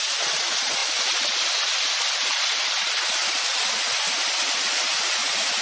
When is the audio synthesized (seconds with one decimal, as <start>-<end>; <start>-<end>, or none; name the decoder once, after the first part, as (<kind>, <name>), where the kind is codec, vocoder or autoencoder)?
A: none